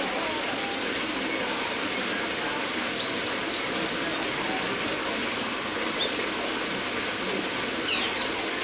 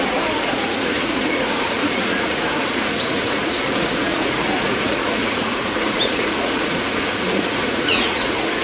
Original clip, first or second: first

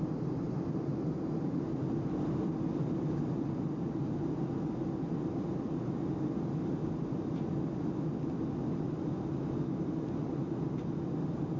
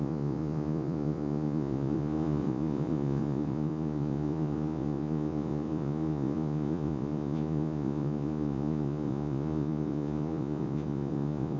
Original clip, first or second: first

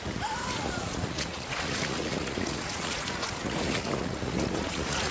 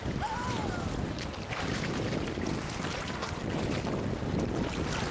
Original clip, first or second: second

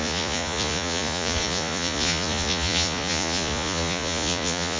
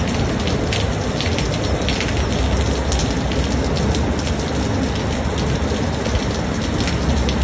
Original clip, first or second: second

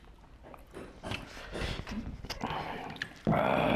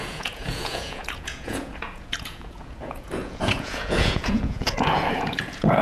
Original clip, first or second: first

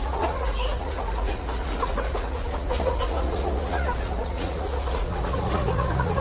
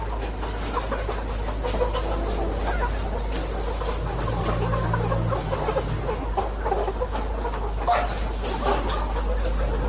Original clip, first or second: second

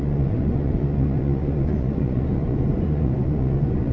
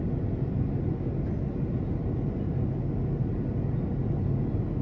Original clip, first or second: second